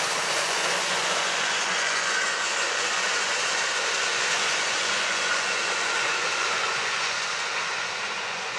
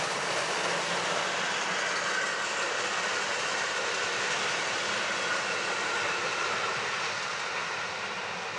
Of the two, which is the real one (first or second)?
second